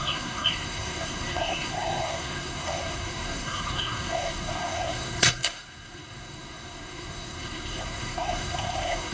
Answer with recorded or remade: remade